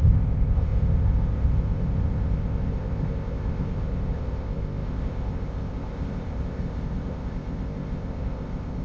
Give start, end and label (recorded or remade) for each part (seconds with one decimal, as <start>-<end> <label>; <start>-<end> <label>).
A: 0.0-8.8 remade